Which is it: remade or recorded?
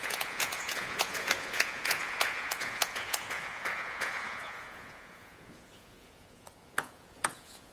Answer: remade